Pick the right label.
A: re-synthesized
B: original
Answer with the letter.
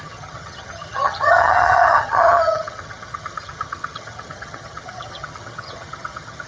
A